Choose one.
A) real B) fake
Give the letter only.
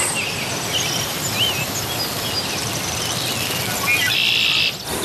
A